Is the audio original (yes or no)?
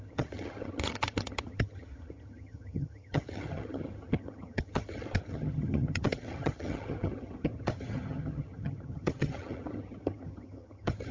no